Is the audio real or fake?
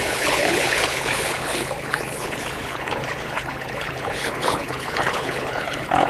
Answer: fake